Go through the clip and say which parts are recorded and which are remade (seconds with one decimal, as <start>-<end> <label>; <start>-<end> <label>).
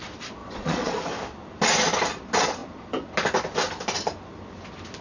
0.0-0.4 recorded; 0.4-1.0 remade; 1.0-5.0 recorded